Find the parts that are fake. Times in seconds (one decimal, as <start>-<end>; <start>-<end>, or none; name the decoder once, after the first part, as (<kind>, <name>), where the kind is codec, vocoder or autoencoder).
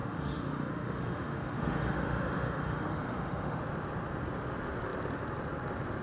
0.0-3.6 (autoencoder, DAC-VAE)